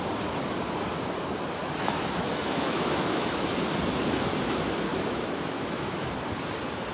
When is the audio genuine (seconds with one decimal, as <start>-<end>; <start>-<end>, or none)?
0.0-1.6; 3.5-4.9; 6.1-6.9